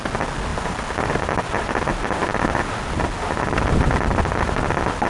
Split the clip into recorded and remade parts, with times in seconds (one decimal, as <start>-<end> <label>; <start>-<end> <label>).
0.0-5.1 recorded